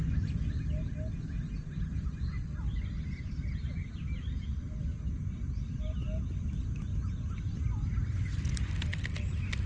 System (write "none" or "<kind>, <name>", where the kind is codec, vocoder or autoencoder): none